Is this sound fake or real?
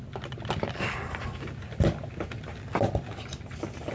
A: real